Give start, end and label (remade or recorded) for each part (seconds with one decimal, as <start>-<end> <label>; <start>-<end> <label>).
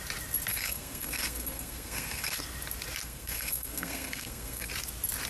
0.0-0.5 recorded; 0.5-2.4 remade; 2.4-3.0 recorded; 3.0-4.7 remade; 4.7-5.3 recorded